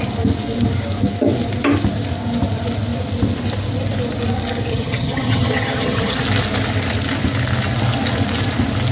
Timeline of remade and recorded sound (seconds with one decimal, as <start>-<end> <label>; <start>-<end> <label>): 0.0-4.7 recorded; 4.7-6.2 remade; 6.2-8.9 recorded